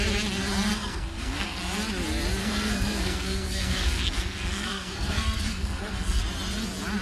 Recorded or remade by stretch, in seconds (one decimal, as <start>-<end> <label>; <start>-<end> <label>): 0.0-0.7 recorded; 0.7-1.6 remade; 1.6-2.4 recorded; 2.4-6.2 remade; 6.2-7.0 recorded